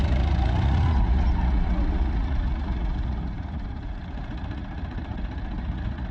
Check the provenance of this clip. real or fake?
fake